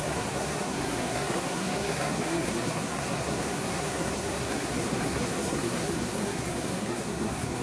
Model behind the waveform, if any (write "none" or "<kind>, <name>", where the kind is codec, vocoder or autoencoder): codec, SNAC